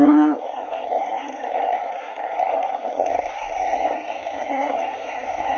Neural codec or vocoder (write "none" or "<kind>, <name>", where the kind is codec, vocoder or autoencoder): codec, SNAC